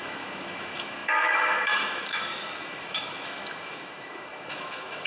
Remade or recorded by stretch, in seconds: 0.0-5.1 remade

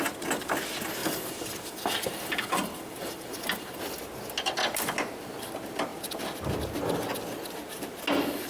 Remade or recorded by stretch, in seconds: 0.0-1.0 recorded; 1.0-3.8 remade; 3.8-8.5 recorded

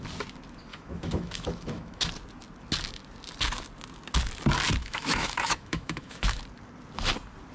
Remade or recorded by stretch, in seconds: 0.0-0.7 recorded; 0.7-2.1 remade; 2.1-4.8 recorded; 4.8-6.4 remade; 6.4-7.5 recorded

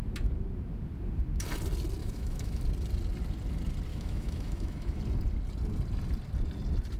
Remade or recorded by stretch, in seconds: 0.0-2.0 recorded; 2.0-2.6 remade; 2.6-3.9 recorded; 3.9-5.0 remade; 5.0-7.0 recorded

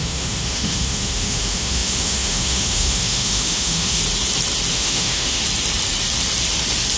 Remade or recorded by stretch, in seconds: 0.0-4.0 remade; 4.0-4.7 recorded; 4.7-5.4 remade; 5.4-7.0 recorded

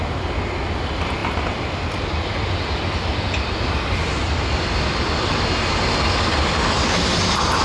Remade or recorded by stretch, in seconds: 0.0-7.6 recorded